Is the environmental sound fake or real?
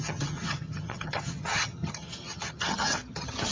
fake